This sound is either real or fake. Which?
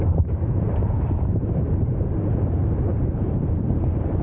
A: fake